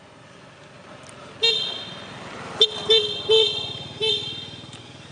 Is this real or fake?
real